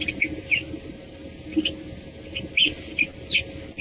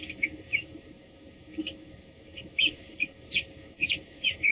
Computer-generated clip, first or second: second